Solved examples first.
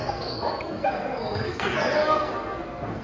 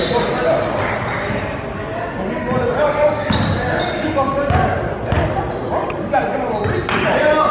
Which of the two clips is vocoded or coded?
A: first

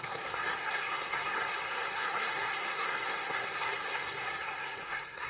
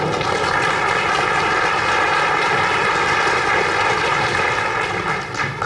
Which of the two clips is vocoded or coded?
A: first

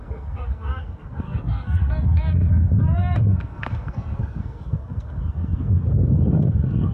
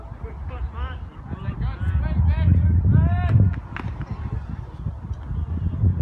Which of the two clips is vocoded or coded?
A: first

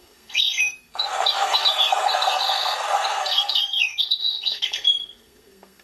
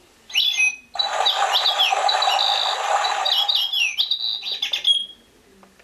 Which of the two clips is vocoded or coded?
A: first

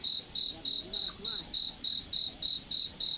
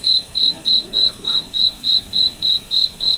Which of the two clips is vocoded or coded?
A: second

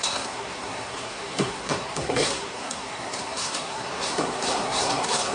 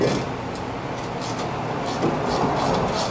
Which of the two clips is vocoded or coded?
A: first